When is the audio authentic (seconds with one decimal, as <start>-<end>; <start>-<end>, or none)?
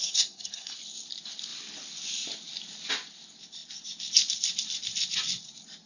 0.8-5.9